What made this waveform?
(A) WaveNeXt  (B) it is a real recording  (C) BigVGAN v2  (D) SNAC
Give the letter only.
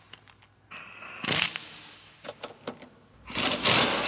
B